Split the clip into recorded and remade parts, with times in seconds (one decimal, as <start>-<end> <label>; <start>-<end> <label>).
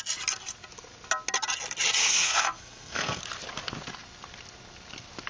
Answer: 0.0-2.0 recorded; 2.0-3.2 remade; 3.2-5.3 recorded